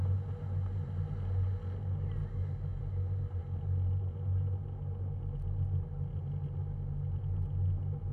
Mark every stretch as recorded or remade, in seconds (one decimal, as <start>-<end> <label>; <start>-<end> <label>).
0.0-2.2 recorded; 2.2-2.8 remade; 2.8-8.1 recorded